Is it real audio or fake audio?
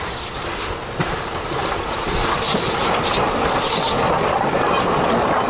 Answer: real